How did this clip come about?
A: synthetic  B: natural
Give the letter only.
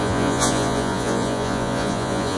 A